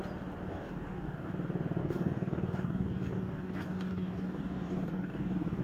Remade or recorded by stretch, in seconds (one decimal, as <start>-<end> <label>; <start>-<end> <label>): 0.0-0.5 recorded; 0.5-1.3 remade; 1.3-1.8 recorded; 1.8-5.6 remade